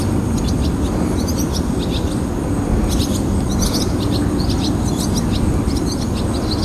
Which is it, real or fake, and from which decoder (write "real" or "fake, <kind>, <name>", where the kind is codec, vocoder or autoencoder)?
real